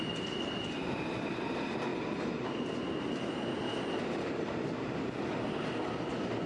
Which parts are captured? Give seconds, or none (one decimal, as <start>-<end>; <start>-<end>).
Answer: 0.0-6.5